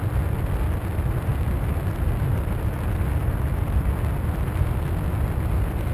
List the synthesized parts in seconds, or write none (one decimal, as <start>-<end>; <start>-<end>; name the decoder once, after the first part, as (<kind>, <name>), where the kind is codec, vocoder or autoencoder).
none